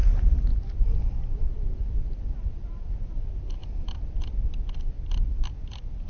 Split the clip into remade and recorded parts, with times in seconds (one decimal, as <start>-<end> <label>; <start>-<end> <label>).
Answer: 0.0-6.1 recorded